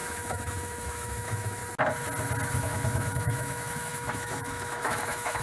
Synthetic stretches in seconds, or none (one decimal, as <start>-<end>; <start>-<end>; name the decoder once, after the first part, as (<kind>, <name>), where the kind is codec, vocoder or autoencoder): 0.0-1.6 (autoencoder, DAC-VAE); 2.6-5.4

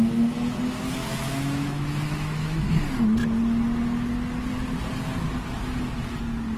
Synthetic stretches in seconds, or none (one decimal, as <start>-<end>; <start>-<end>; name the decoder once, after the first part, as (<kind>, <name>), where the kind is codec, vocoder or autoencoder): 1.0-2.7 (autoencoder, DAC-VAE)